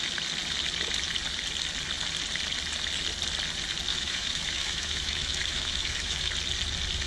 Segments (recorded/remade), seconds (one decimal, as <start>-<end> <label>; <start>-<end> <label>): 0.0-3.9 recorded; 3.9-6.3 remade; 6.3-7.1 recorded